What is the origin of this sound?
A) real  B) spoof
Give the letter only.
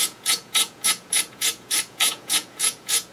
B